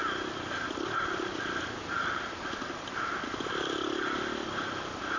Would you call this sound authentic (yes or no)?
yes